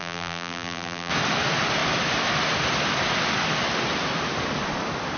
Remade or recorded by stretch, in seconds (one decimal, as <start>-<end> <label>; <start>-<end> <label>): 0.0-1.1 remade; 1.1-5.2 recorded